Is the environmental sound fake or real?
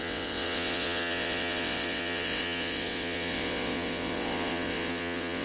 fake